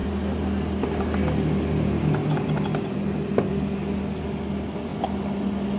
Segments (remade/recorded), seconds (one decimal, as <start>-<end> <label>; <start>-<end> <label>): 0.0-5.8 recorded